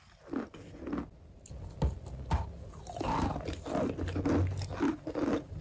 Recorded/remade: recorded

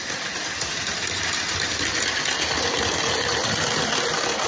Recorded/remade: recorded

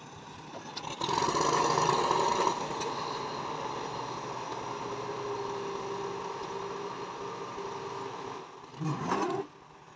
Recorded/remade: recorded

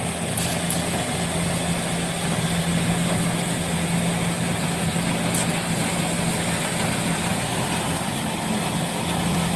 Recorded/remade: recorded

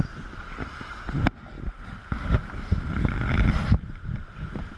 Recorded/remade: recorded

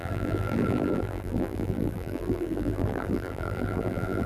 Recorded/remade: remade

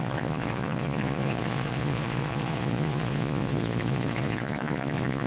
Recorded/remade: remade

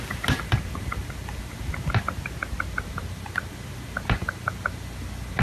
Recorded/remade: recorded